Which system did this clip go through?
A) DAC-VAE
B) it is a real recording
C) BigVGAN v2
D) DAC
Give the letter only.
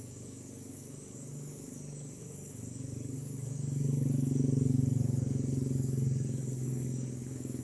D